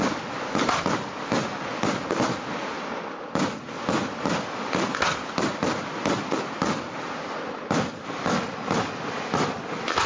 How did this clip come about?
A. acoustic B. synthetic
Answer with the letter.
A